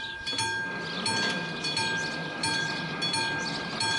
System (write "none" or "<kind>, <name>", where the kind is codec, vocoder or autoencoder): none